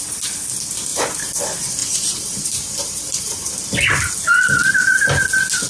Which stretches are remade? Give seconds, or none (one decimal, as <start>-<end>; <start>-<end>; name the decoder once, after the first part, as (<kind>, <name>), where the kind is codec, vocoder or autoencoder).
0.9-1.4 (vocoder, BigVGAN v2); 1.8-3.5

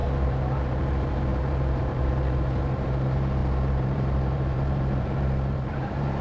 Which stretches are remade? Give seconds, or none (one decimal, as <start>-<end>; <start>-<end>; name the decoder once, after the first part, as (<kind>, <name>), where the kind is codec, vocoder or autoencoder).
0.0-6.2 (vocoder, BigVGAN v2)

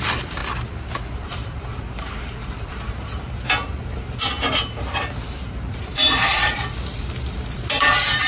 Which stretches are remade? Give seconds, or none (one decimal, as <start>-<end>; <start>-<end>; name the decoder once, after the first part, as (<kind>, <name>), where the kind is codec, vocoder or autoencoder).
0.0-0.4 (vocoder, BigVGAN v2); 1.1-8.3

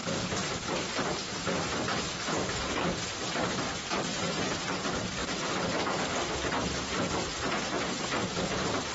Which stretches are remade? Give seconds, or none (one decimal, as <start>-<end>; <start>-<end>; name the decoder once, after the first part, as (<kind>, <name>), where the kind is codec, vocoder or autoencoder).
0.4-2.3 (vocoder, BigVGAN v2); 5.2-6.1

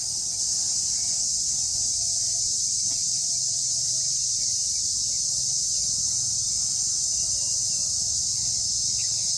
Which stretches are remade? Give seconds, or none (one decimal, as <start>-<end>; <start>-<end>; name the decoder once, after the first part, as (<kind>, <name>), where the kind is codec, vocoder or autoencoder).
none

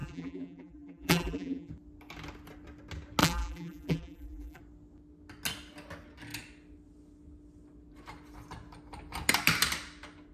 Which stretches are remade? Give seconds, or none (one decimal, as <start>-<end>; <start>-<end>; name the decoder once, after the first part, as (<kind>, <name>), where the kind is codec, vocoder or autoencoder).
0.0-1.7 (vocoder, BigVGAN v2); 3.2-4.6